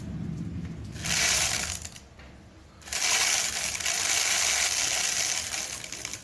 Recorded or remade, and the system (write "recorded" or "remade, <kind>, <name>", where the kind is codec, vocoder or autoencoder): recorded